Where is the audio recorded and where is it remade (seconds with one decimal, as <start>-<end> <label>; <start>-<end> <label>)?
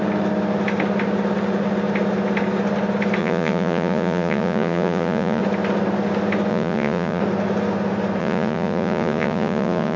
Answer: 0.0-3.2 recorded; 3.2-5.4 remade; 5.4-6.5 recorded; 6.5-7.2 remade; 7.2-8.2 recorded; 8.2-10.0 remade